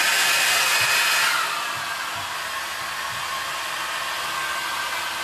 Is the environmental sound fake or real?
real